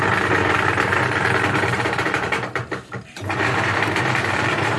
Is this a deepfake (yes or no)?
yes